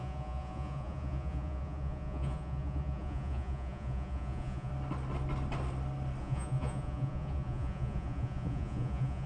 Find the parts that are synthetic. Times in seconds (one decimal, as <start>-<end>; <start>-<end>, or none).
0.0-4.7; 6.2-9.3